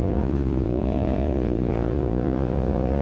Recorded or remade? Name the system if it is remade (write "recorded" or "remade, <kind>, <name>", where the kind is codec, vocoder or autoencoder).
remade, vocoder, Vocos